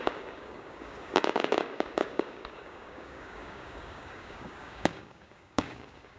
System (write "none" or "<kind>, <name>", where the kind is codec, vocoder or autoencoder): codec, DAC